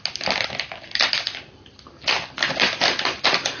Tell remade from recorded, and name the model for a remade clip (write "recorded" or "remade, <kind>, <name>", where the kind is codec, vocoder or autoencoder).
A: recorded